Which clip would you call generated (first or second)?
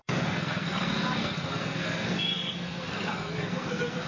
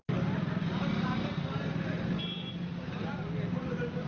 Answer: first